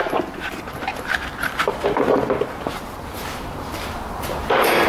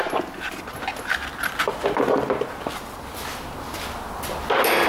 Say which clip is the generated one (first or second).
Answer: first